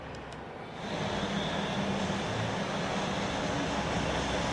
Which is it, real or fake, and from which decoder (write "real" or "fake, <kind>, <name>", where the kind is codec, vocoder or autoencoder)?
real